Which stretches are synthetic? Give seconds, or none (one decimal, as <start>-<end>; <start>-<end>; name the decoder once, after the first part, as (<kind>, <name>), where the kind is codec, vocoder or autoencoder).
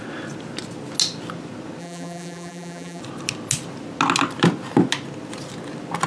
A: 1.8-3.0 (vocoder, BigVGAN v2)